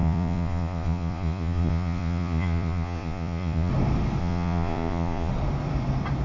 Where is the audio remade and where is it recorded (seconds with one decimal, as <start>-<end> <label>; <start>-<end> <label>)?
0.0-3.7 remade; 3.7-4.2 recorded; 4.2-5.3 remade; 5.3-6.2 recorded

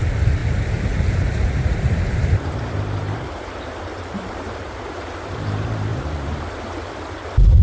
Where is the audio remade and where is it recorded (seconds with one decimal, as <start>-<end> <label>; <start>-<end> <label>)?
0.0-0.4 recorded; 0.4-5.0 remade; 5.0-5.9 recorded; 5.9-6.6 remade; 6.6-7.6 recorded